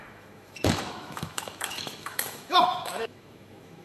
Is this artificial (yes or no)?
yes